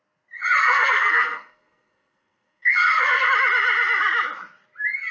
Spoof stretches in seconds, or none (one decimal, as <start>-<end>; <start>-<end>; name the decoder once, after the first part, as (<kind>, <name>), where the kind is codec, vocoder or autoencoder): 0.6-3.3 (codec, SNAC)